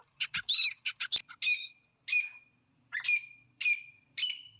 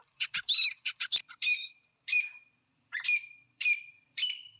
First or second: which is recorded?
first